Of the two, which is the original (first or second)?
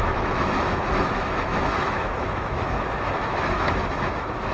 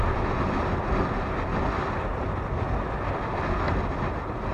second